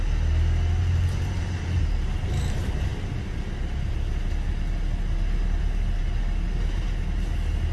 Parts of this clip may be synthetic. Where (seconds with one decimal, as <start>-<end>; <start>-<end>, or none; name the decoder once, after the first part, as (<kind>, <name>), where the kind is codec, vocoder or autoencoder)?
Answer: 0.8-1.8 (vocoder, BigVGAN v2)